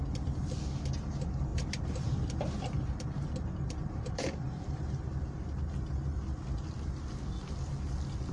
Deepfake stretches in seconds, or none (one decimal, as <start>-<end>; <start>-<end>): 1.5-5.4